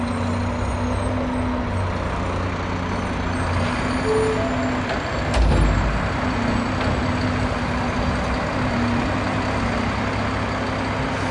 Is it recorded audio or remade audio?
recorded